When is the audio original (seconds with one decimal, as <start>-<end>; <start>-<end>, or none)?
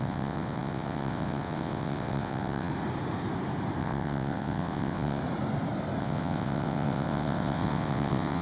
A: 2.7-3.8; 5.2-6.0